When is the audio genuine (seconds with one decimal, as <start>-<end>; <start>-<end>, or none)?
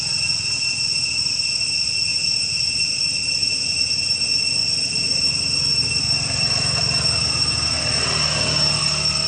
0.0-2.1; 2.8-3.4; 3.9-9.3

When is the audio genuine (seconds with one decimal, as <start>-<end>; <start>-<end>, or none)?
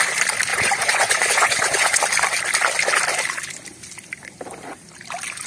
0.0-0.5; 2.0-5.5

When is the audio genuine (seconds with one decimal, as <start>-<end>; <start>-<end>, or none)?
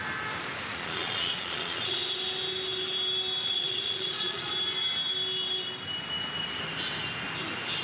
0.0-0.7; 2.0-3.4; 4.5-7.8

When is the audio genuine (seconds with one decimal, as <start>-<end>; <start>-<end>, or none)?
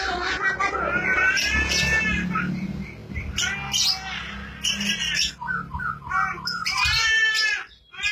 0.0-8.1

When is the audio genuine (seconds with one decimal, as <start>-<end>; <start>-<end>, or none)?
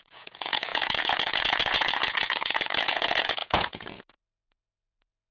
none